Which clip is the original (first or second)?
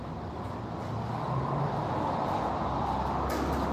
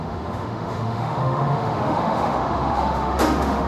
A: first